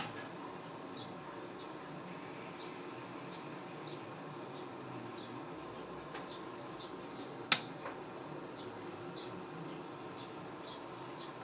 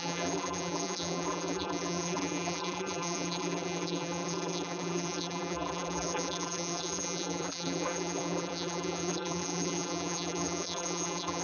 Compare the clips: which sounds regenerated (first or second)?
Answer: second